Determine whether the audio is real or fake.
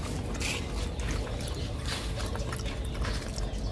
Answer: real